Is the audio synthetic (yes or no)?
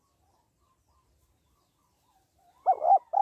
no